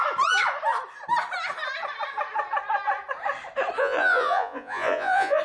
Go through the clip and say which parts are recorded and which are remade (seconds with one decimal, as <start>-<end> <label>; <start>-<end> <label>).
0.0-3.8 recorded; 3.8-5.4 remade